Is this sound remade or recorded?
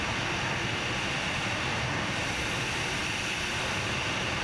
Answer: recorded